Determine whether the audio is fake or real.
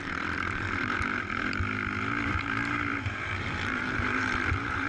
fake